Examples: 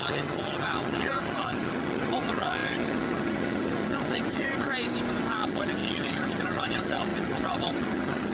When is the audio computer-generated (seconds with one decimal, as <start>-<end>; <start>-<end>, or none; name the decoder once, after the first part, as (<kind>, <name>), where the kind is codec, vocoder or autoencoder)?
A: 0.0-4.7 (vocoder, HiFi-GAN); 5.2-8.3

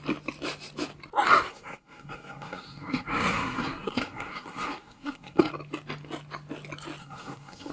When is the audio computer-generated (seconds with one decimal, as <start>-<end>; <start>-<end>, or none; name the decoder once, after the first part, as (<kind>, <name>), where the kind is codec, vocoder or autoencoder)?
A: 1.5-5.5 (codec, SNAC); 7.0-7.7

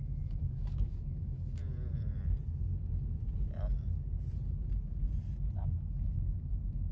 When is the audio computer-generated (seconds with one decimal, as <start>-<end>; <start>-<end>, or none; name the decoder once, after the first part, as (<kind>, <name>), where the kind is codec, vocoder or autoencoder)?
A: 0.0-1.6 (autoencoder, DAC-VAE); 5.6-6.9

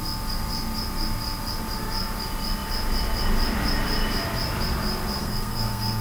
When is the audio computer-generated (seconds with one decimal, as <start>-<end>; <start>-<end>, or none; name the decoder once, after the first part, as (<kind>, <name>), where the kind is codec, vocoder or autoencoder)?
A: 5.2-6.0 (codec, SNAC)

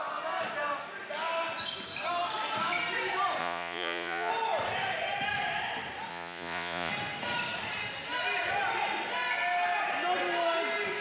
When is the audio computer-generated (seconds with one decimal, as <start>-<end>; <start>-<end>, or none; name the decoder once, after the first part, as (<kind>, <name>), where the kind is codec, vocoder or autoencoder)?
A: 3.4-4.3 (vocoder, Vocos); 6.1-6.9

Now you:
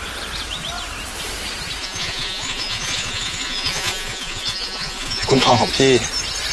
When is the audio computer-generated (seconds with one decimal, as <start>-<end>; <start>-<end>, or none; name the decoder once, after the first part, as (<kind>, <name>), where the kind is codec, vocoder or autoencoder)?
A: 1.8-5.7 (vocoder, Vocos)

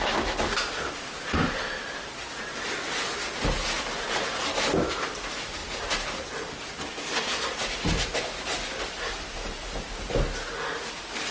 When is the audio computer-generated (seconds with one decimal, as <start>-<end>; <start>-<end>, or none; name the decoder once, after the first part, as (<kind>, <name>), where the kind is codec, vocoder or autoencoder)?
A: 5.6-6.6 (vocoder, BigVGAN v2)